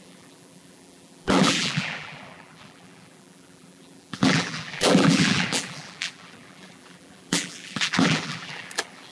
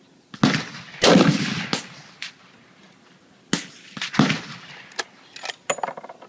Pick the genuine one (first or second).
second